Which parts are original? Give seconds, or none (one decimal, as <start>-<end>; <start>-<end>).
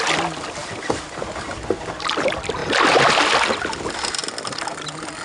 0.0-5.2